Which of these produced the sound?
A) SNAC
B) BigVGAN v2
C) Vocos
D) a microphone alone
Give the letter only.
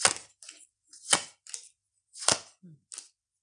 D